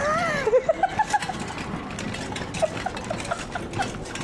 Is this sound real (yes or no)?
yes